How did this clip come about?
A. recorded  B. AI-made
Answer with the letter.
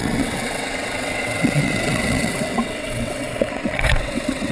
B